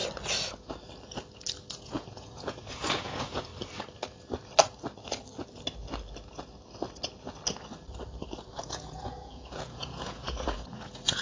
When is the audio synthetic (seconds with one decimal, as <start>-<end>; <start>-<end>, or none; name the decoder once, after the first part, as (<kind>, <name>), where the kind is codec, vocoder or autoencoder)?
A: 1.7-3.5 (vocoder, Vocos); 8.5-11.2